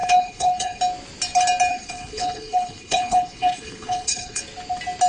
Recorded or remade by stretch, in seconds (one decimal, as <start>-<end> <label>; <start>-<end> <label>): 0.0-0.8 remade; 0.8-1.7 recorded; 1.7-4.4 remade; 4.4-5.1 recorded